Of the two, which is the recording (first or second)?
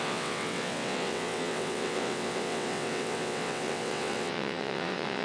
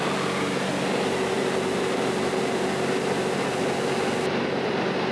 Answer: second